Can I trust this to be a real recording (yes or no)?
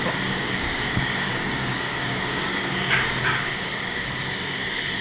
no